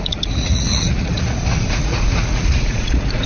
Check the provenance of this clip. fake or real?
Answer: fake